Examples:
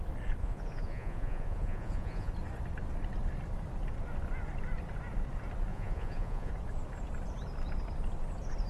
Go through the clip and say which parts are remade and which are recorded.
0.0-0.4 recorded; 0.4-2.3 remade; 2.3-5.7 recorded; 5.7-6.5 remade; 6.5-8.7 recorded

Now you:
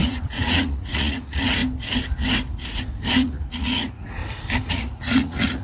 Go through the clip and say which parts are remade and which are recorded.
0.0-1.6 remade; 1.6-3.1 recorded; 3.1-4.2 remade; 4.2-4.7 recorded; 4.7-5.6 remade

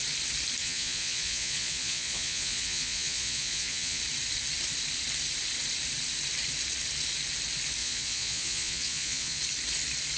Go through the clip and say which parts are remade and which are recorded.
0.0-0.6 recorded; 0.6-4.0 remade; 4.0-7.8 recorded; 7.8-9.4 remade; 9.4-10.2 recorded